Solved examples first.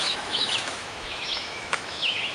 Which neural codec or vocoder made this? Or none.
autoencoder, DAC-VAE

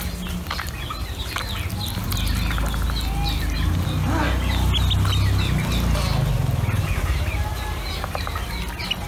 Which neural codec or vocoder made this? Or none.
none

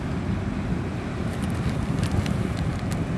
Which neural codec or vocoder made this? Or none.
none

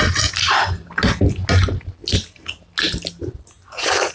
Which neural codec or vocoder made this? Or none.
none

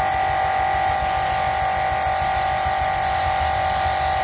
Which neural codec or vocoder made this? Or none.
none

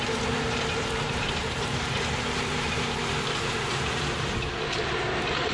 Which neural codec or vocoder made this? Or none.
vocoder, BigVGAN v2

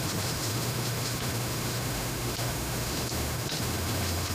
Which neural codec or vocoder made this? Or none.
autoencoder, DAC-VAE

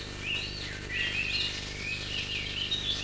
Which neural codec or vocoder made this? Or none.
none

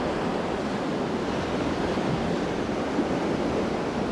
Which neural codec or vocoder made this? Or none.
none